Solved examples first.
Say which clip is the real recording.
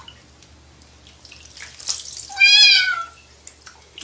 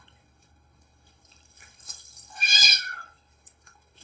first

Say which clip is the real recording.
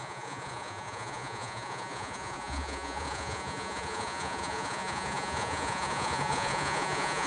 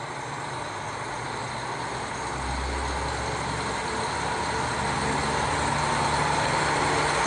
second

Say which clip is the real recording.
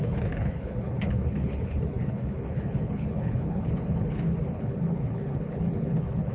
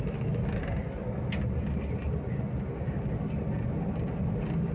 second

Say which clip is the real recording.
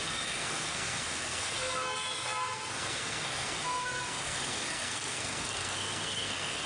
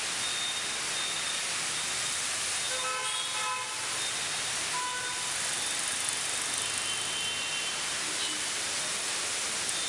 second